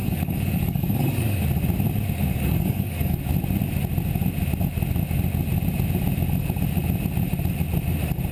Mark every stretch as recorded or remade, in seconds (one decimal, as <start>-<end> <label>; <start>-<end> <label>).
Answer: 0.0-1.4 remade; 1.4-2.3 recorded; 2.3-3.2 remade; 3.2-8.3 recorded